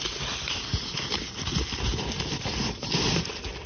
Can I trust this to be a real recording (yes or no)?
yes